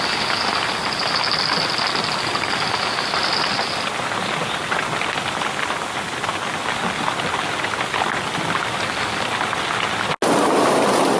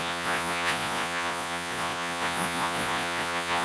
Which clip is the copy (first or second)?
second